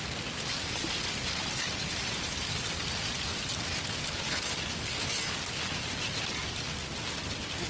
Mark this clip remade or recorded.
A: recorded